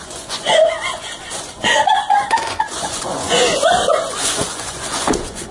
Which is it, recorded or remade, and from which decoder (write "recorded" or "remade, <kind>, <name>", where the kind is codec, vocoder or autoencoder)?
remade, vocoder, Vocos